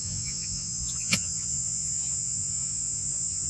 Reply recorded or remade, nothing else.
remade